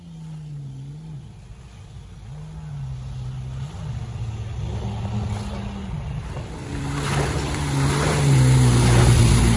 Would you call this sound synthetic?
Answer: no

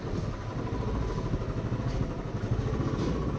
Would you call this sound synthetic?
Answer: no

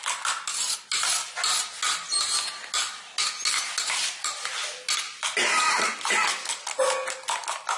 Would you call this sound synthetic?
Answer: no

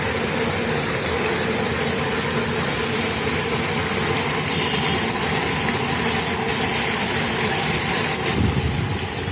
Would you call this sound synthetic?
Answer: no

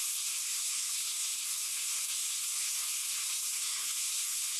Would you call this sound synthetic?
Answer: yes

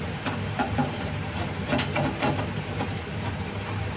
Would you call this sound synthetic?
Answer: yes